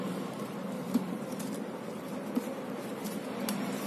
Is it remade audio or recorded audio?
remade